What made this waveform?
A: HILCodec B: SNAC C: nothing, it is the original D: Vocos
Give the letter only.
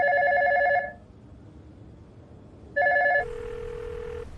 C